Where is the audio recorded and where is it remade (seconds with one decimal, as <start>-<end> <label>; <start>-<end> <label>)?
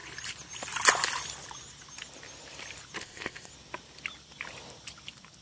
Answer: 0.0-3.0 recorded; 3.0-3.5 remade; 3.5-5.4 recorded